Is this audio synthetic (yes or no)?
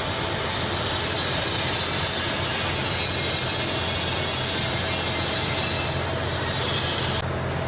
no